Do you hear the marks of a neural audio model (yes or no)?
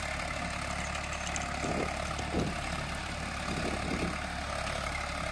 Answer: no